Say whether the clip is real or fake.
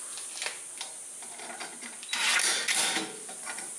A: real